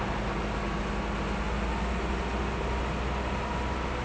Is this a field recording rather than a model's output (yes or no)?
yes